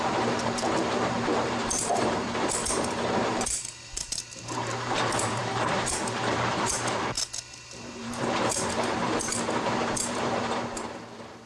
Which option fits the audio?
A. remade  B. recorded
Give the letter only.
A